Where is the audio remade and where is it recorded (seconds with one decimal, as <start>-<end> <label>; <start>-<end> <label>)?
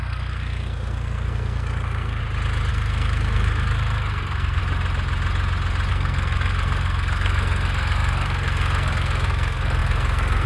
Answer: 0.0-2.2 remade; 2.2-2.7 recorded; 2.7-4.6 remade; 4.6-5.9 recorded; 5.9-10.5 remade